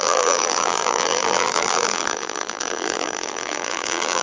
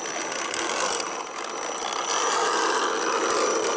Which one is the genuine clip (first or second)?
second